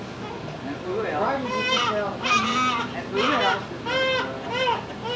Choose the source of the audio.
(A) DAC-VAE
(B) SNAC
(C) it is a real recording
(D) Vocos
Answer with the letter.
C